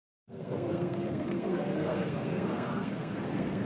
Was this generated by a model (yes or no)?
yes